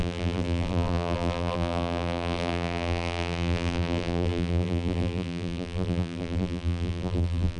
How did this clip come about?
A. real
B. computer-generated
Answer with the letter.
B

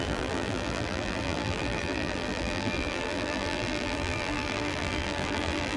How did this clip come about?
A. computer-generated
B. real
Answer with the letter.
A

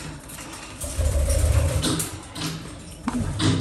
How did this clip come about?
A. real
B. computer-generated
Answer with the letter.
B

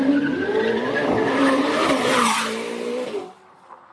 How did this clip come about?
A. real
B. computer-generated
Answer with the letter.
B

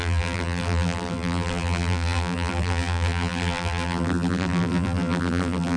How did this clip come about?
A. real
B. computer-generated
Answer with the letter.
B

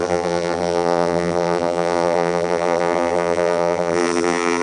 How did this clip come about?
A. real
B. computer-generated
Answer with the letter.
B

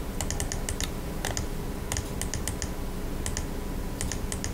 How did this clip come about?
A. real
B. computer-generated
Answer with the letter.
A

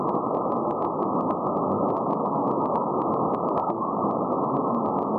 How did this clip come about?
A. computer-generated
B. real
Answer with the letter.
B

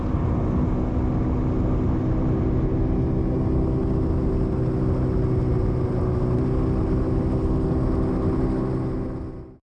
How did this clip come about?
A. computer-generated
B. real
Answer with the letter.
B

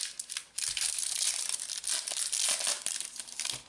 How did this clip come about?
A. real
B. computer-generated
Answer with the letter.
A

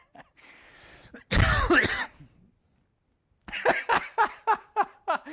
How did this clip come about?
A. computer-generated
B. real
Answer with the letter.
B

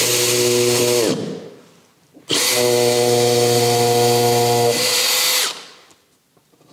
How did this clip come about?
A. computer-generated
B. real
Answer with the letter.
B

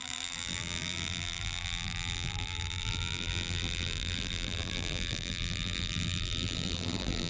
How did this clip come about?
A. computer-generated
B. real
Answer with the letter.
A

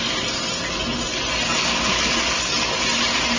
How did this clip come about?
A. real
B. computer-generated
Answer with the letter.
A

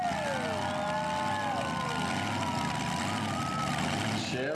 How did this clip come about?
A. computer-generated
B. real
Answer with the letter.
B